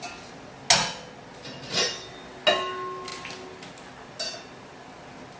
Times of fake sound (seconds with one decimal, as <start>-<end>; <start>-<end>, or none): none